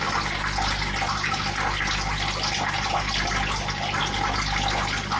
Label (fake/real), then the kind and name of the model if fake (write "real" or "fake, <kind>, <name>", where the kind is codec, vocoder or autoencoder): real